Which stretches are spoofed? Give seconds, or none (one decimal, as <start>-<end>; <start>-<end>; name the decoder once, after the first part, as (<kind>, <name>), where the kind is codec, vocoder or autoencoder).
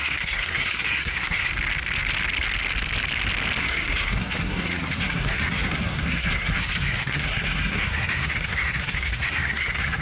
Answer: 0.0-1.5 (codec, SNAC); 3.6-10.0